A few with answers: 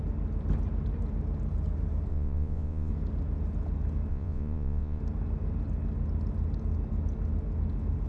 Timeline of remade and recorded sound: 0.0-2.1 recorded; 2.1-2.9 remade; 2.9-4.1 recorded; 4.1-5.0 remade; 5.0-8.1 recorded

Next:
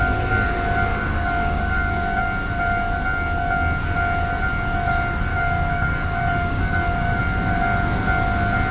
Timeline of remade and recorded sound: 0.0-0.9 recorded; 0.9-2.2 remade; 2.2-5.3 recorded; 5.3-7.2 remade; 7.2-8.7 recorded

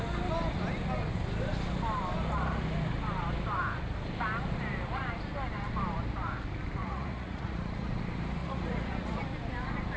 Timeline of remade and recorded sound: 0.0-6.8 recorded; 6.8-8.0 remade; 8.0-8.4 recorded; 8.4-9.2 remade; 9.2-10.0 recorded

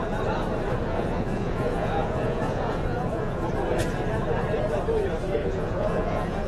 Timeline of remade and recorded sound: 0.0-0.8 recorded; 0.8-3.5 remade; 3.5-5.4 recorded; 5.4-6.5 remade

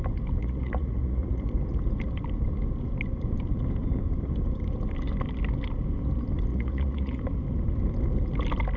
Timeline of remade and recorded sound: 0.0-0.4 recorded; 0.4-1.5 remade; 1.5-6.5 recorded; 6.5-7.2 remade; 7.2-8.8 recorded

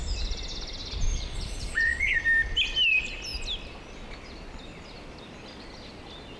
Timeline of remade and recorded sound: 0.0-1.1 recorded; 1.1-2.2 remade; 2.2-6.4 recorded

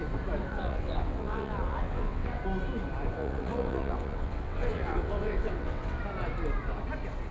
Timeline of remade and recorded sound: 0.0-0.5 recorded; 0.5-2.4 remade; 2.4-3.2 recorded; 3.2-6.0 remade; 6.0-7.3 recorded